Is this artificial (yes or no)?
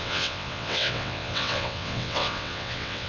yes